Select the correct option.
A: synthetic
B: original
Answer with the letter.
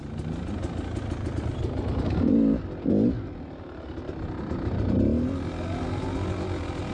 B